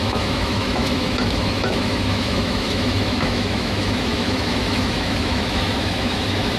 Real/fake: fake